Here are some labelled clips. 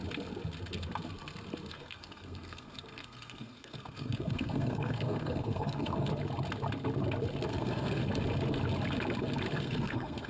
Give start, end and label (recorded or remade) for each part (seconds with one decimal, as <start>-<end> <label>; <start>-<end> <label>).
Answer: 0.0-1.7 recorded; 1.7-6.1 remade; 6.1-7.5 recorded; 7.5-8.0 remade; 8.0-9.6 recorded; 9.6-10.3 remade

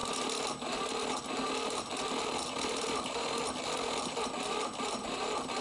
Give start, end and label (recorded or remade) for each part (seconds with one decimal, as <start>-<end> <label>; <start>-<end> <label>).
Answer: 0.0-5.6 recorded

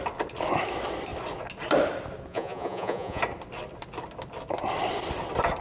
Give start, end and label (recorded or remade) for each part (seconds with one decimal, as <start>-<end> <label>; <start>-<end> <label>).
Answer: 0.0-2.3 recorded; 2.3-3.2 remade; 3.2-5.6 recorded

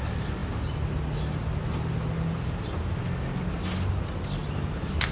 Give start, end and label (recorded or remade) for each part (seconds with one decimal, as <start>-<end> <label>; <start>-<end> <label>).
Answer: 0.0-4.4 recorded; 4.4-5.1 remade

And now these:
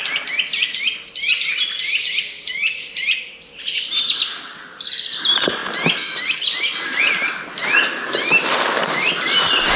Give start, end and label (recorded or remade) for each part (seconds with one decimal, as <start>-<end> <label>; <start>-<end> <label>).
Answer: 0.0-9.8 recorded

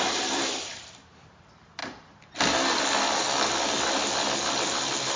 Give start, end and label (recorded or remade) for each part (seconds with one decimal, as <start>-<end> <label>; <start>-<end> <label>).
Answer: 0.0-1.8 remade; 1.8-5.2 recorded

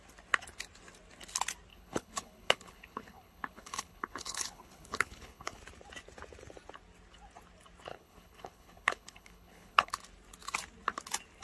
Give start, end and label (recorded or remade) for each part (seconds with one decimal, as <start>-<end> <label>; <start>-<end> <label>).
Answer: 0.0-1.7 recorded; 1.7-5.6 remade; 5.6-7.9 recorded; 7.9-9.9 remade; 9.9-11.4 recorded

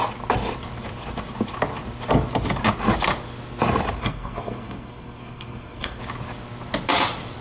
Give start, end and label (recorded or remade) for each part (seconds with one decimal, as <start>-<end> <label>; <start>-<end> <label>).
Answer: 0.0-4.0 recorded; 4.0-6.0 remade; 6.0-7.4 recorded